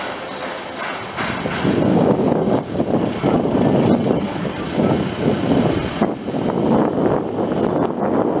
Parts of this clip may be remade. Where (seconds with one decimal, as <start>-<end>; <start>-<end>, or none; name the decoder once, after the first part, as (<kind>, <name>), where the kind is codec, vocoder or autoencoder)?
1.9-2.8 (codec, DAC)